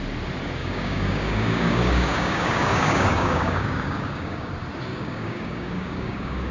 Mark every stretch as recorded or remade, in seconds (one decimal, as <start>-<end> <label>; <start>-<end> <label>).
0.0-0.6 recorded; 0.6-4.5 remade; 4.5-4.9 recorded; 4.9-6.5 remade